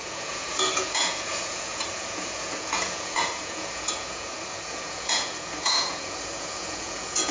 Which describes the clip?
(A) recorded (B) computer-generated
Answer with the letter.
B